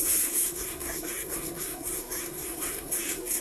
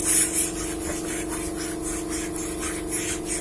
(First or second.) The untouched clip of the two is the second